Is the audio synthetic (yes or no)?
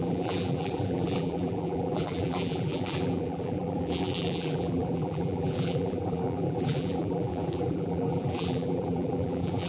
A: yes